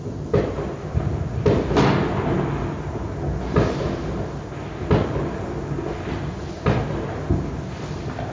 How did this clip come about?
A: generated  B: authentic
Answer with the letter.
B